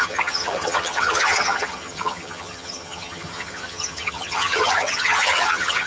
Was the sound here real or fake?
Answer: fake